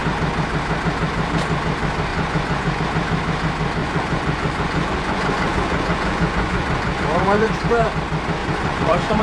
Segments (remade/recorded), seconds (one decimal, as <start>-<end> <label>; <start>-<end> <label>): 0.0-2.1 recorded; 2.1-2.8 remade; 2.8-3.8 recorded; 3.8-7.5 remade; 7.5-8.4 recorded; 8.4-9.2 remade